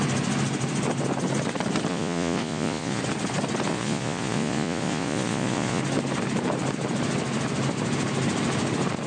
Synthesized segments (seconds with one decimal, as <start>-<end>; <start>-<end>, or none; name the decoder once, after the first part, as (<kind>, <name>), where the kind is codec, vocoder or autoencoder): 1.9-3.0 (vocoder, Vocos); 3.7-5.8